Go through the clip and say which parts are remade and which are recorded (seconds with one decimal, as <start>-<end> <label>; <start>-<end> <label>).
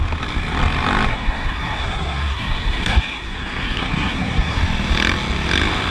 0.0-1.1 recorded; 1.1-4.6 remade; 4.6-5.9 recorded